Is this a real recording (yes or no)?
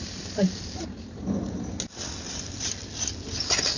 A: yes